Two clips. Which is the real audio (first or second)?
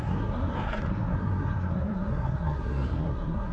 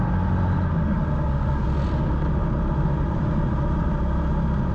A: second